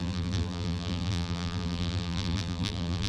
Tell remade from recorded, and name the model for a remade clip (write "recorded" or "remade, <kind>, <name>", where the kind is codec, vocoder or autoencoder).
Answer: remade, vocoder, BigVGAN v2